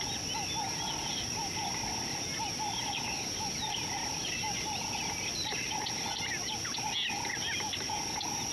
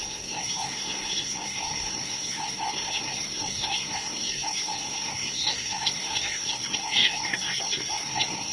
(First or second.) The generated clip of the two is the second